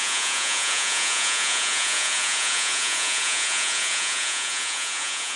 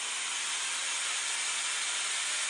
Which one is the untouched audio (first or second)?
second